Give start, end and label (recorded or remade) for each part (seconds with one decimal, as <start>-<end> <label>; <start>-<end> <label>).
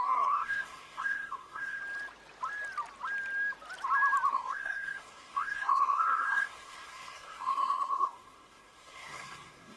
0.0-1.8 remade; 1.8-4.3 recorded; 4.3-9.8 remade